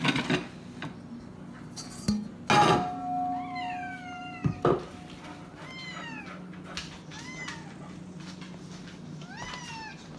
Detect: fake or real real